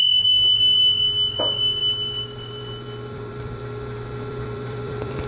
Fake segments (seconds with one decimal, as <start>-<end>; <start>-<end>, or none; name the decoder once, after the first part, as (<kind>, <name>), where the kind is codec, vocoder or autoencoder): 1.8-5.3 (vocoder, BigVGAN v2)